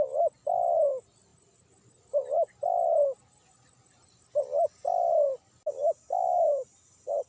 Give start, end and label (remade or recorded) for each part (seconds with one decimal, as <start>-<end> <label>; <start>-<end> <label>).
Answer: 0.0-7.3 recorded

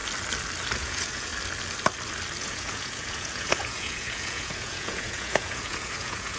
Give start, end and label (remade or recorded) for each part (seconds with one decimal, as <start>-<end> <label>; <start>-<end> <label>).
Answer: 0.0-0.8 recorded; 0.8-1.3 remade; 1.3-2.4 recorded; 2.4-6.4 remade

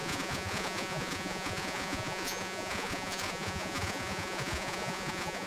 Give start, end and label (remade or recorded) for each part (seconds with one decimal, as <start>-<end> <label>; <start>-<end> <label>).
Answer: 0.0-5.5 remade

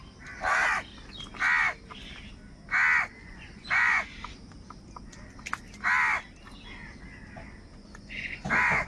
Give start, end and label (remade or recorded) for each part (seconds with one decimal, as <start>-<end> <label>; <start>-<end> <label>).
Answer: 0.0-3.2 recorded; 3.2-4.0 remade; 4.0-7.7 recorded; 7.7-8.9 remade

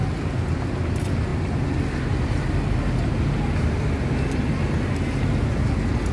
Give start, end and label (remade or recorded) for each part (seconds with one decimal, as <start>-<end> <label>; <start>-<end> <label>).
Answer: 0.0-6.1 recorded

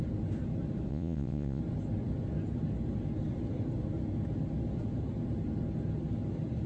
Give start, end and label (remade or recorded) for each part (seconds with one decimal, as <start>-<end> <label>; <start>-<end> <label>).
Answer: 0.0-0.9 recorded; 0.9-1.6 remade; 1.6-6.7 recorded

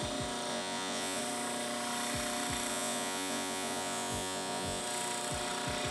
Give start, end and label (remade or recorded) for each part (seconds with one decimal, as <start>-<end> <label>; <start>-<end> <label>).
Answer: 0.0-0.5 recorded; 0.5-1.2 remade; 1.2-2.7 recorded; 2.7-4.8 remade; 4.8-5.9 recorded

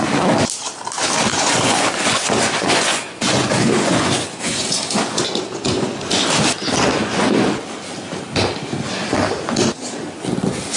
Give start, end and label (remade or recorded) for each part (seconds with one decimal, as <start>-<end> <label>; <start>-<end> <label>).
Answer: 0.0-1.3 recorded; 1.3-6.3 remade; 6.3-7.0 recorded; 7.0-7.5 remade; 7.5-10.8 recorded